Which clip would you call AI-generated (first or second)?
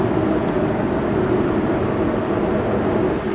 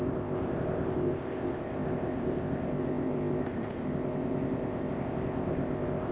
second